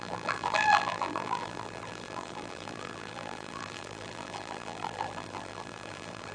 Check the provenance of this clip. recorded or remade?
remade